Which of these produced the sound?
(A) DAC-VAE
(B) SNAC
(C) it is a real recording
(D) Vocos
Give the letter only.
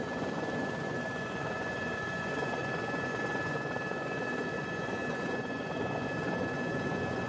D